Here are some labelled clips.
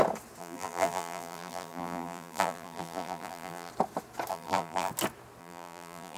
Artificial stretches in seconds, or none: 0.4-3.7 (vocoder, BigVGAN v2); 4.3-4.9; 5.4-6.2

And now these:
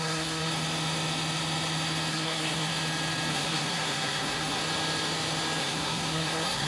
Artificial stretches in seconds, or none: 0.0-0.5 (codec, SNAC); 2.1-2.7; 3.3-4.6; 5.6-6.7